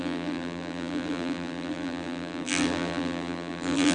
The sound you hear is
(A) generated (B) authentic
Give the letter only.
A